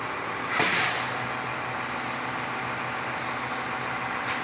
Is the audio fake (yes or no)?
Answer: no